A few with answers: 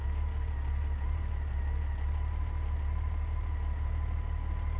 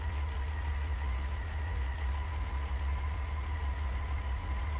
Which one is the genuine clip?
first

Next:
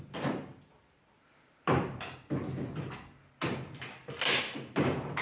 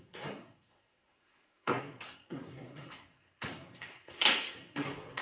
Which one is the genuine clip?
first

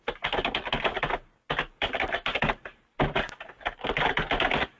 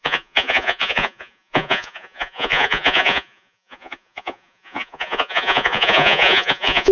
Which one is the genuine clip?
first